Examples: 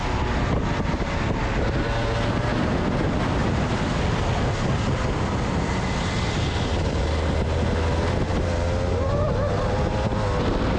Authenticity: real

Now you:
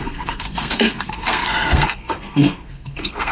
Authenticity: fake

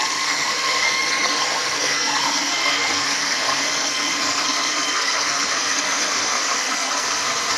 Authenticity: fake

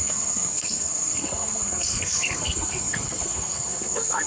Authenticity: fake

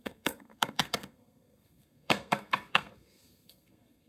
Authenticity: fake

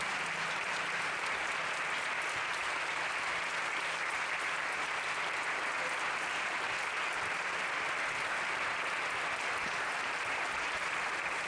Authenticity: real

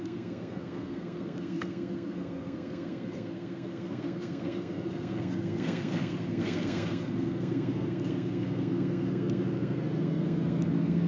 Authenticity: fake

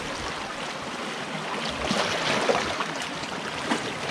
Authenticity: real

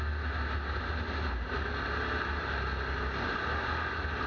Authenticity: real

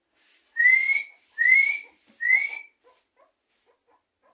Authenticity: real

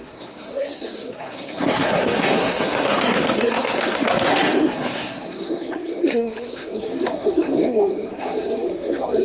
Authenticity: fake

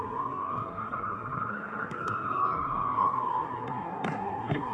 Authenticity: fake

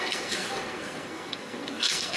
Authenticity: fake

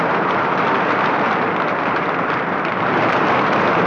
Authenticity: real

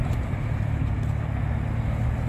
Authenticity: real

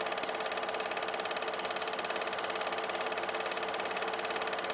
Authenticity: real